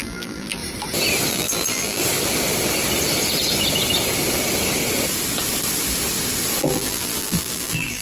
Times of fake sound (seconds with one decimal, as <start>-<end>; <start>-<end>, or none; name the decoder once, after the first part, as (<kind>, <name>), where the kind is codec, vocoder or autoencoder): 0.0-0.6 (vocoder, BigVGAN v2); 1.3-2.0; 6.6-8.0

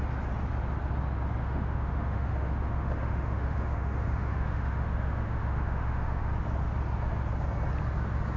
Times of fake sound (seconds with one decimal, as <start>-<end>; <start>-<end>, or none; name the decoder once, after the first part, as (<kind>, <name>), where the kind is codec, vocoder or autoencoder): 1.4-6.3 (autoencoder, DAC-VAE)